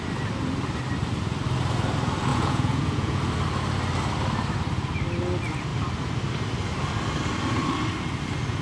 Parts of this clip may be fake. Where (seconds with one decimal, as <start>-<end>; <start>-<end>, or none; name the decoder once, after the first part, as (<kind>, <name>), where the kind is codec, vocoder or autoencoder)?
2.3-3.2 (vocoder, Vocos)